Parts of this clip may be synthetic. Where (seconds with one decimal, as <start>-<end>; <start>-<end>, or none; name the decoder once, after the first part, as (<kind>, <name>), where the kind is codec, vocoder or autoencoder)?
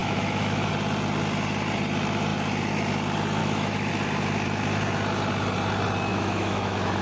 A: 0.0-0.7 (autoencoder, DAC-VAE); 3.4-3.9; 6.1-7.0